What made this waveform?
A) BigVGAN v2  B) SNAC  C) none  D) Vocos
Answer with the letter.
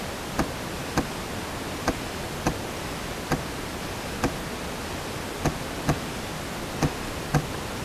C